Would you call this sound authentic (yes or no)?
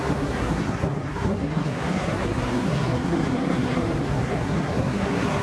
no